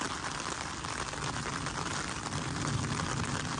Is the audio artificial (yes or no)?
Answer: no